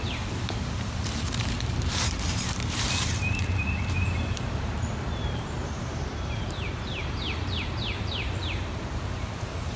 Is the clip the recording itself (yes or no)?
no